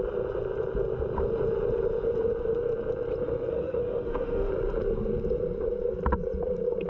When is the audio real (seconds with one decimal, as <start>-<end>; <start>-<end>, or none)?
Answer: 0.0-3.5; 4.5-6.9